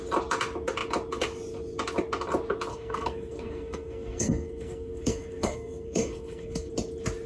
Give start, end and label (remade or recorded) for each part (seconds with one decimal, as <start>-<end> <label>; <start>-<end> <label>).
0.0-2.7 recorded; 2.7-6.7 remade; 6.7-7.3 recorded

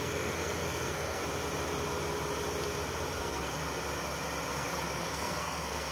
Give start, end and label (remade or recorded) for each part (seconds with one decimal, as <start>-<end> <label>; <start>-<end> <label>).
0.0-1.2 remade; 1.2-3.2 recorded; 3.2-3.6 remade; 3.6-4.5 recorded; 4.5-5.9 remade

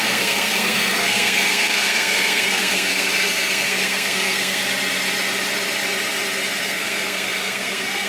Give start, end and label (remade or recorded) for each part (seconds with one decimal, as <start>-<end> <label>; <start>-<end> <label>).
0.0-4.6 remade; 4.6-6.6 recorded; 6.6-8.1 remade

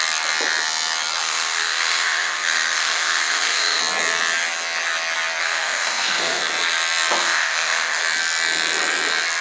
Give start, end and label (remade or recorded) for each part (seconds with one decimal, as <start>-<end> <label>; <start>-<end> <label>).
0.0-1.2 recorded; 1.2-3.8 remade; 3.8-5.4 recorded; 5.4-6.4 remade; 6.4-7.2 recorded; 7.2-8.0 remade; 8.0-9.4 recorded

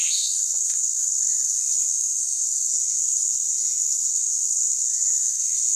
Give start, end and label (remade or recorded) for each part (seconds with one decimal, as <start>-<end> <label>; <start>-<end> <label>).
0.0-5.8 remade

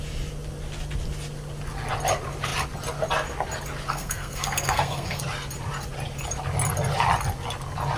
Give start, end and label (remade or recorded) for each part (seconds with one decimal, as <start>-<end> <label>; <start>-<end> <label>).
0.0-3.9 recorded; 3.9-5.2 remade; 5.2-8.0 recorded